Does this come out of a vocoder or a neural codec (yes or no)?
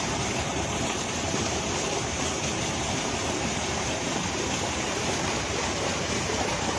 yes